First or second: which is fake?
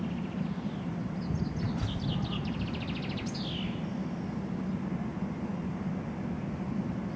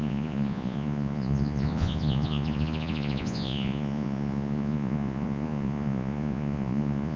second